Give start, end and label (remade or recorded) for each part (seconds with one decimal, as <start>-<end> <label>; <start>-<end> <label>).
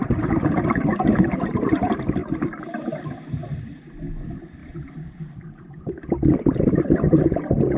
0.0-2.2 remade; 2.2-3.3 recorded; 3.3-4.6 remade; 4.6-6.8 recorded; 6.8-7.8 remade